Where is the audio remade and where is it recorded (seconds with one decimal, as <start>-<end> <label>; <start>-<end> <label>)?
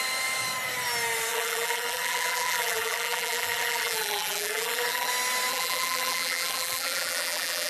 0.0-1.3 recorded; 1.3-5.1 remade; 5.1-5.5 recorded; 5.5-7.7 remade